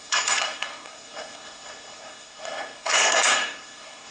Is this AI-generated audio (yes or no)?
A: yes